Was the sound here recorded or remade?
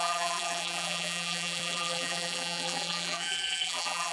remade